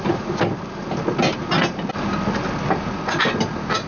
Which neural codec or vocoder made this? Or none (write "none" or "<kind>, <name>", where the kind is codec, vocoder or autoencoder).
none